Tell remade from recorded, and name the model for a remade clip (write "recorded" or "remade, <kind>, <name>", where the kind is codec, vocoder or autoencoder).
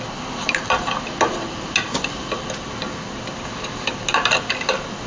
recorded